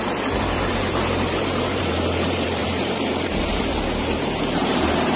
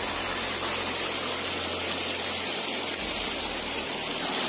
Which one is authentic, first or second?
second